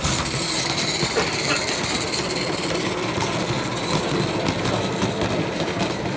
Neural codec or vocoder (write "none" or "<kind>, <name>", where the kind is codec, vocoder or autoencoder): none